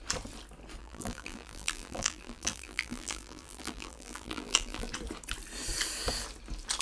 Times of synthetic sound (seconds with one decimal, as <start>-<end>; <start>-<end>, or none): 0.8-4.9